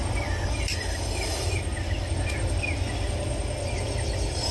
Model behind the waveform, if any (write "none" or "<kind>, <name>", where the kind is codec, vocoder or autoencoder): none